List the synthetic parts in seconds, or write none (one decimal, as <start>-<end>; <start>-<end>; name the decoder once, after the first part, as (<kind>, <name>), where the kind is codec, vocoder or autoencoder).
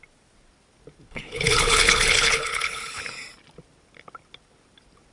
1.1-3.0 (codec, HILCodec)